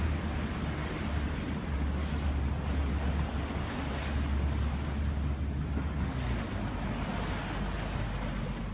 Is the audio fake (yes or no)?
no